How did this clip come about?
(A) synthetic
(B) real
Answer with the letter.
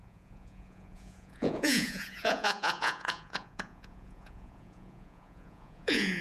A